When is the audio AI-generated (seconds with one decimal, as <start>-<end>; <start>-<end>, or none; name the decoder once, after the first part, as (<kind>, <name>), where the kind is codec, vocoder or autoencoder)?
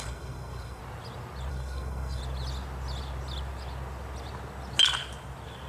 0.0-0.8 (codec, SNAC); 1.5-2.2